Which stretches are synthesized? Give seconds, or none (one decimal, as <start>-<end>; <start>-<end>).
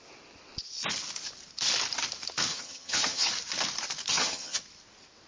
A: 2.5-3.3; 4.1-4.6